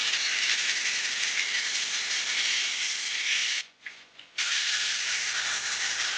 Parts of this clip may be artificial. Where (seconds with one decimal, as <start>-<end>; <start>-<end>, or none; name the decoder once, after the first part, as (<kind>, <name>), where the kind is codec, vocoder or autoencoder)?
3.4-4.5 (vocoder, Vocos)